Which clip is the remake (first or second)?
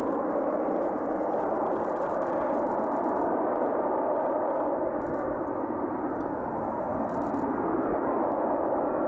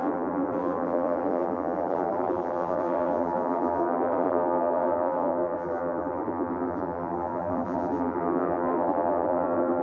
second